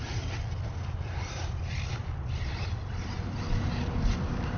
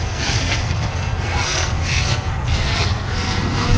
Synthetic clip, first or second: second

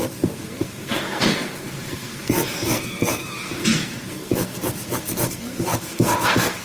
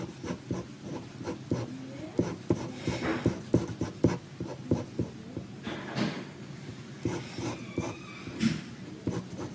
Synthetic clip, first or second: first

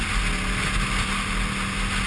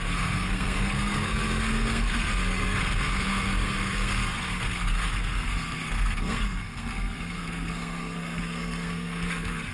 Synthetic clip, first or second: second